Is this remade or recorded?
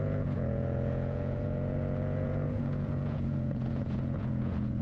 remade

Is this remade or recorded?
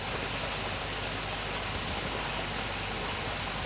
recorded